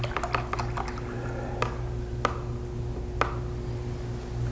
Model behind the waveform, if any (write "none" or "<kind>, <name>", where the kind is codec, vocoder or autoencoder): none